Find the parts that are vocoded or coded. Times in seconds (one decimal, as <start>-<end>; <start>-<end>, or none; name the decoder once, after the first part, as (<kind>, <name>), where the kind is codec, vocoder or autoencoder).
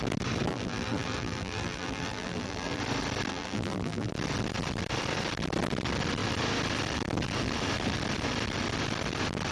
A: 0.5-2.8 (vocoder, BigVGAN v2); 3.3-4.1